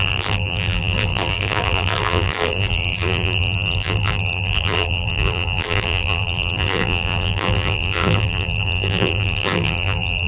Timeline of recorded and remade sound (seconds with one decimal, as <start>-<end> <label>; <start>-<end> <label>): 0.0-10.3 remade